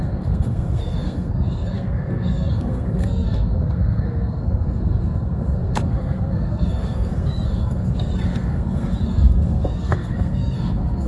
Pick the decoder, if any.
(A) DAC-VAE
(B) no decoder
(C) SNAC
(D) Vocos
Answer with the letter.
C